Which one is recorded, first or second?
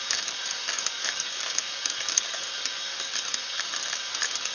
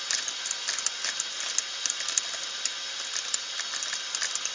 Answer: second